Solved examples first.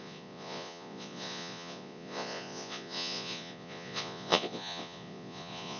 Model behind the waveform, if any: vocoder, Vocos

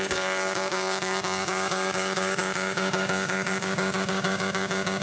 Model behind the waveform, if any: codec, DAC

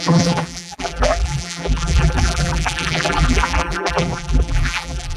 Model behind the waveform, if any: vocoder, BigVGAN v2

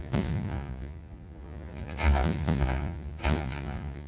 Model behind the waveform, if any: vocoder, Vocos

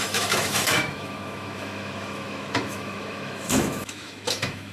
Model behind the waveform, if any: autoencoder, DAC-VAE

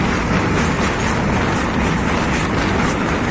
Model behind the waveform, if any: none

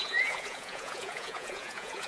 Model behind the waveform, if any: vocoder, Vocos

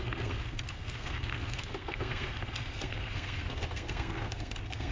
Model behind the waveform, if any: codec, SNAC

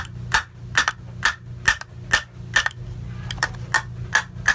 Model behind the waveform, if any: none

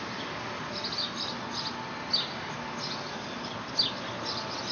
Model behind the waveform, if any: none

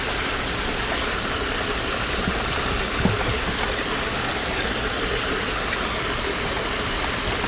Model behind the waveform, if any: none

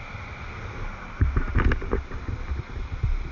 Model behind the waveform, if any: none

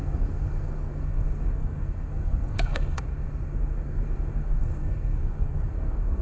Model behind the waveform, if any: codec, SNAC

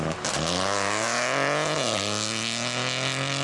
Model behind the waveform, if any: none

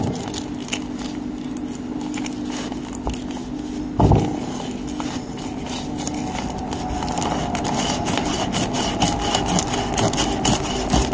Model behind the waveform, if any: none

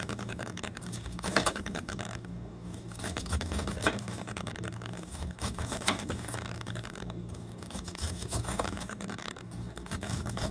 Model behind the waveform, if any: codec, DAC